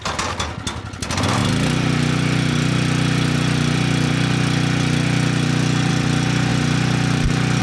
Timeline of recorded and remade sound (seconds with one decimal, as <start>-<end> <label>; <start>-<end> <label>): 0.0-7.6 recorded